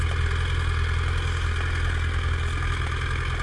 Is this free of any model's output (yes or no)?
yes